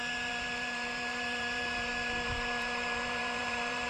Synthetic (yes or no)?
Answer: yes